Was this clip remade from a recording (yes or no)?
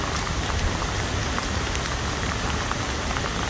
no